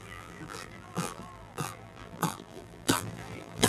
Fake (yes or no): yes